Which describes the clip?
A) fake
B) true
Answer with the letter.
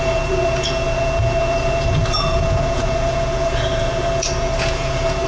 A